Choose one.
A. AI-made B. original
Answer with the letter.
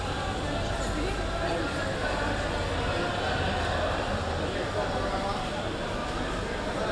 B